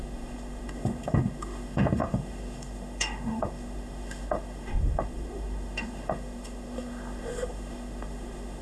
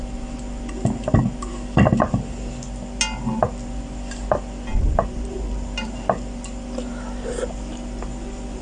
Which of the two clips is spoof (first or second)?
first